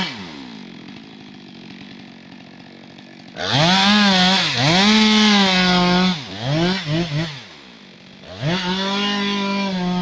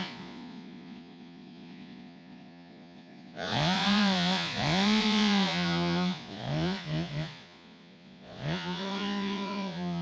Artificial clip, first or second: second